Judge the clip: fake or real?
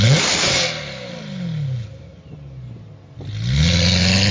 real